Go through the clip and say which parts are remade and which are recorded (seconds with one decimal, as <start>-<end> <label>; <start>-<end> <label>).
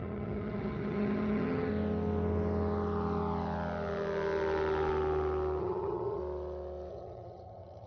0.0-1.7 remade; 1.7-5.6 recorded; 5.6-6.2 remade; 6.2-6.9 recorded; 6.9-7.9 remade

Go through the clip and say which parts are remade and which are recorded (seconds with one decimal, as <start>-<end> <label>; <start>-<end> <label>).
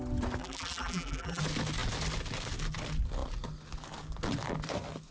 0.0-0.4 recorded; 0.4-1.4 remade; 1.4-5.1 recorded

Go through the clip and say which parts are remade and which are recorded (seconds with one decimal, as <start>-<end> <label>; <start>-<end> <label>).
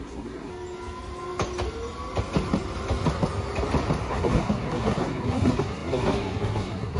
0.0-0.5 remade; 0.5-4.1 recorded; 4.1-7.0 remade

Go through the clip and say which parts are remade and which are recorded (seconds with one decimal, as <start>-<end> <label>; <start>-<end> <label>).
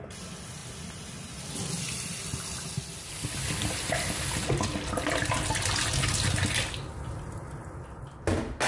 0.0-8.7 recorded